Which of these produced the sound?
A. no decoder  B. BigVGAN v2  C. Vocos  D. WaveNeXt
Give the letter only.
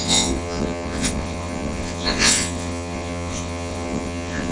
D